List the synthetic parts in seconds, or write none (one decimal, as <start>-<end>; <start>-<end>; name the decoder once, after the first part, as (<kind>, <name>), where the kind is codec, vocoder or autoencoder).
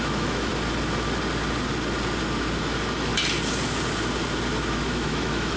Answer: 0.0-0.5 (autoencoder, DAC-VAE); 2.6-3.1; 4.7-5.6